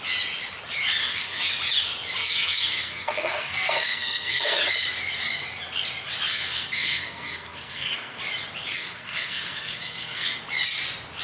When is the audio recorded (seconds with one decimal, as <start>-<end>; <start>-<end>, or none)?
0.0-1.0; 1.5-2.2; 4.6-6.3; 8.2-8.7; 10.4-11.2